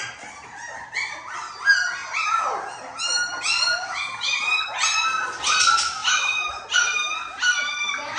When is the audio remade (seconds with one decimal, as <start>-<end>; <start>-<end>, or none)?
none